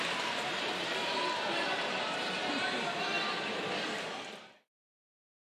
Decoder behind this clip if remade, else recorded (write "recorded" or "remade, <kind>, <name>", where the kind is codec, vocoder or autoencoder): remade, vocoder, BigVGAN v2